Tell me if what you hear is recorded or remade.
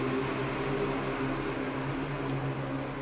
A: recorded